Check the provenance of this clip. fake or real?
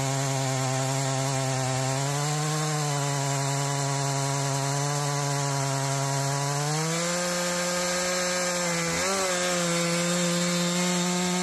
real